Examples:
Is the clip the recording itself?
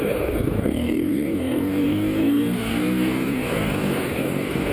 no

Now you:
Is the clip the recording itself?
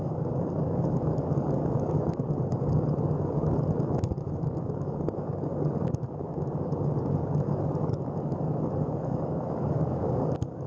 no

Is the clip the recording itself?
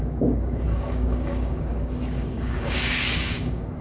no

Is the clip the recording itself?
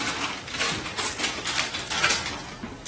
no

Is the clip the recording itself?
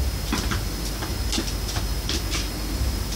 yes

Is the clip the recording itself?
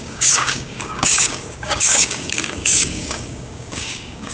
no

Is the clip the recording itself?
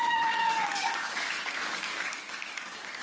no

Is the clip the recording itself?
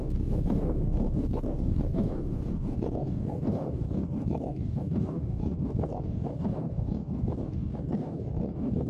no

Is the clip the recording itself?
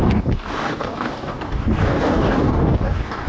no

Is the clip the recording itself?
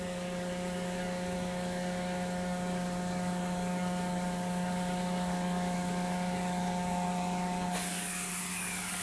no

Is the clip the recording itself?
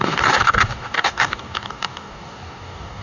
no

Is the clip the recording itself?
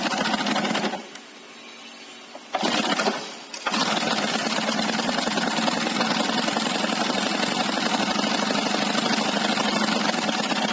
yes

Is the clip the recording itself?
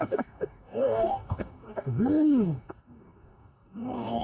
no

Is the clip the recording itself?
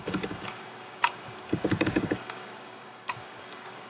no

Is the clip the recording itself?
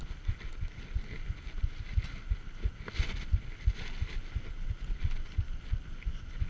yes